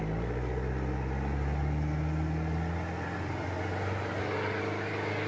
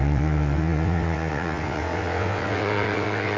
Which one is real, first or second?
first